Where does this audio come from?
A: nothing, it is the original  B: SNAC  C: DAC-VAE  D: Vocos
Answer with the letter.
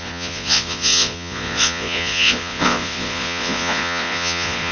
D